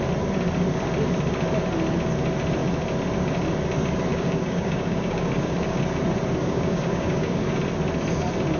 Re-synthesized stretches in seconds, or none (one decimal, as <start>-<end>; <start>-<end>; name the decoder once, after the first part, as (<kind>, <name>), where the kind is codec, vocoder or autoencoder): 4.1-5.8 (codec, DAC); 6.4-7.6